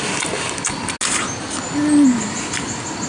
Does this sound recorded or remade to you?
recorded